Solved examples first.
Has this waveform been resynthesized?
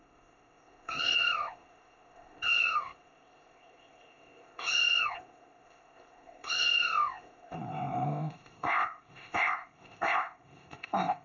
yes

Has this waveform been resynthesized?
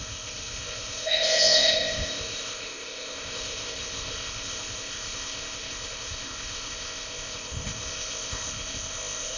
yes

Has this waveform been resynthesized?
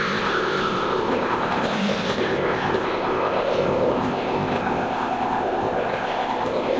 yes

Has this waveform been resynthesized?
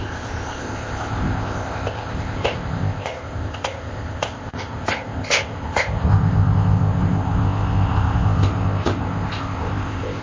yes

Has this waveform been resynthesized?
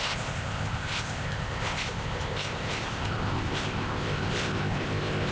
yes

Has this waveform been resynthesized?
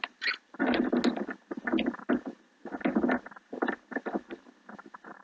no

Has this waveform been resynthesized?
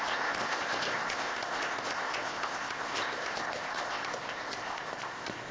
yes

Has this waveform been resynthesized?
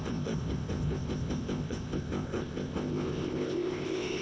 yes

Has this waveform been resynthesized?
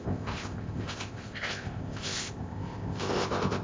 yes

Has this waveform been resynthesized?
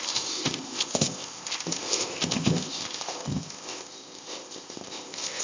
yes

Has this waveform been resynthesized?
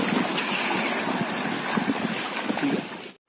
no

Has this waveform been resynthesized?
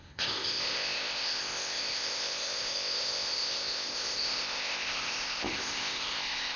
yes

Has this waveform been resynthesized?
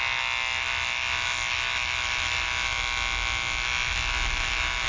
no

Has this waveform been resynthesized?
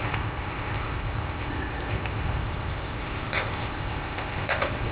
yes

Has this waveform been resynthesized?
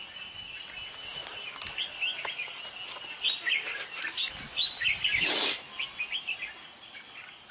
no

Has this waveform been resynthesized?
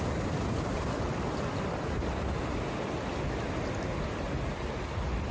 no